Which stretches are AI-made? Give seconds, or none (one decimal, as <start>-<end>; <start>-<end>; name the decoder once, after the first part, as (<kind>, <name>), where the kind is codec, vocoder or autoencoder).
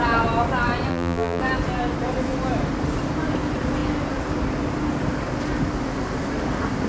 0.9-1.4 (vocoder, BigVGAN v2)